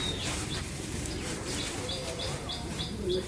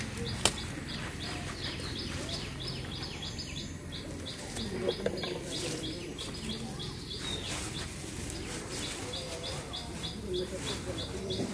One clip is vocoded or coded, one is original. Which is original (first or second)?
second